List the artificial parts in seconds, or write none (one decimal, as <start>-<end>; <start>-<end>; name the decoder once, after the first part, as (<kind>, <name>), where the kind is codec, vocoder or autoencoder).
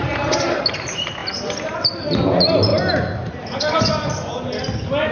0.0-0.6 (vocoder, BigVGAN v2); 2.7-3.8